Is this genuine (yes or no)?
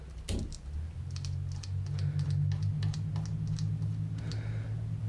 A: yes